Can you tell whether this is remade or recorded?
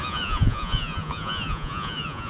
remade